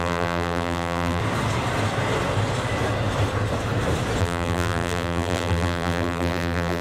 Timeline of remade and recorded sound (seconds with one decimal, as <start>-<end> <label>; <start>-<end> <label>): 0.0-1.2 remade; 1.2-4.2 recorded; 4.2-6.8 remade